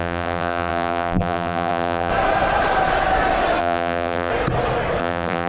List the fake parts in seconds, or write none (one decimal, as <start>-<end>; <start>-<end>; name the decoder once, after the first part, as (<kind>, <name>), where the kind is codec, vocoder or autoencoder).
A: 0.0-2.1 (vocoder, BigVGAN v2); 3.6-4.3; 5.0-5.5